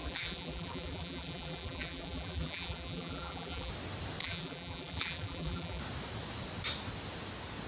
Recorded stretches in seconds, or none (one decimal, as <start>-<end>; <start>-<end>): 3.7-4.2; 5.8-7.7

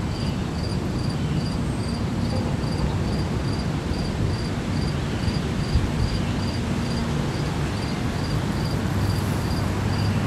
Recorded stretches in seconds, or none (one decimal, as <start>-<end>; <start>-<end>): 0.0-0.7; 5.7-10.3

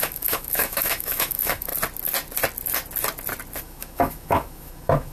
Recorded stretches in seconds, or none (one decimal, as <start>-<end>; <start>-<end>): 1.7-3.6

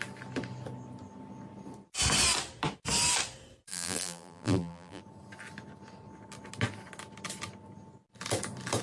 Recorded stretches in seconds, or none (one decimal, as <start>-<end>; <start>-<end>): 0.0-3.7; 5.0-8.8

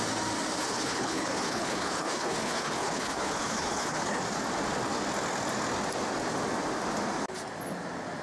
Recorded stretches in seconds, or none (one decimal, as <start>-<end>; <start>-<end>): 0.0-0.6; 4.2-8.2

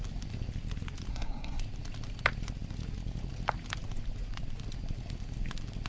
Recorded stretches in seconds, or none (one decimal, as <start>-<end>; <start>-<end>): 0.0-1.1; 1.6-5.9

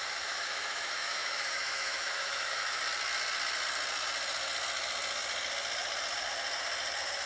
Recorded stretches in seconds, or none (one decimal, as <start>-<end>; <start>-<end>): 2.8-7.3